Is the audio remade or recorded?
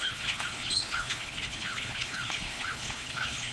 remade